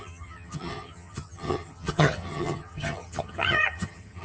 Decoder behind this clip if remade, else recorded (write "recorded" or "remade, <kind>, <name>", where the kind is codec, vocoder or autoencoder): remade, vocoder, HiFi-GAN